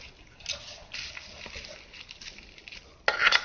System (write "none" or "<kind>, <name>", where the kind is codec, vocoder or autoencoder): none